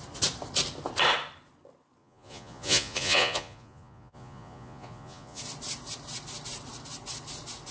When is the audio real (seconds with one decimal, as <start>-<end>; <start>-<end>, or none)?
0.0-2.0; 5.4-7.7